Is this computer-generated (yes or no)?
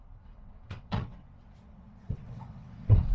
yes